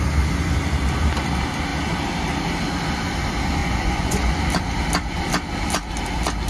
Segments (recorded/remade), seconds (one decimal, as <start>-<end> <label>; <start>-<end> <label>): 0.0-3.6 recorded; 3.6-4.4 remade; 4.4-6.5 recorded